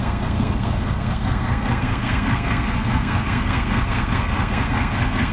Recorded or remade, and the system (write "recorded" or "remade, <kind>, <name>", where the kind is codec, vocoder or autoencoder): remade, codec, SNAC